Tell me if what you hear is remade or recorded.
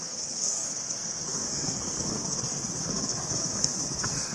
remade